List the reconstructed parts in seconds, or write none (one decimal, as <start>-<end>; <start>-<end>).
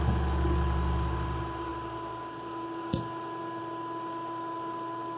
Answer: none